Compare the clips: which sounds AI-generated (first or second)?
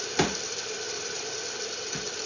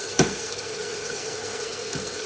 second